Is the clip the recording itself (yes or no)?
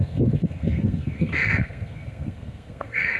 no